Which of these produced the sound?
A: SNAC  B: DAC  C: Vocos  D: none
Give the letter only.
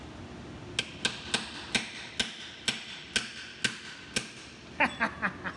D